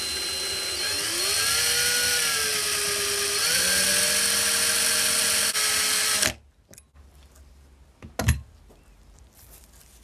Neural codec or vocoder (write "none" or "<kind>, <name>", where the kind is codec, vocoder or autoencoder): none